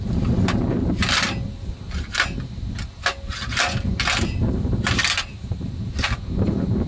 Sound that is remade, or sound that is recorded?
recorded